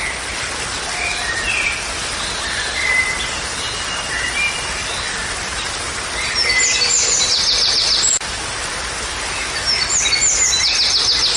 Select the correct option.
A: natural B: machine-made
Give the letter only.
A